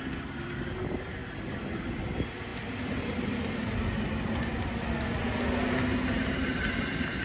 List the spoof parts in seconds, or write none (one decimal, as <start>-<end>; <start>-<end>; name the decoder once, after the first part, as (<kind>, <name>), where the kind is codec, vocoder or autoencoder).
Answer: none